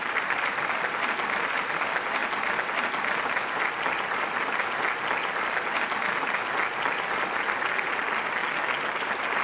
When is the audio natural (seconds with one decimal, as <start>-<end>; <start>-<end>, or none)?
0.0-9.4